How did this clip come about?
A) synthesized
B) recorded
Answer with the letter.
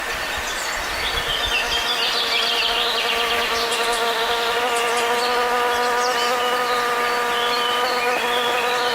B